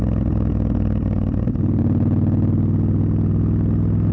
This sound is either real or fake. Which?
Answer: real